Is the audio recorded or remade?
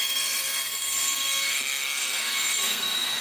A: remade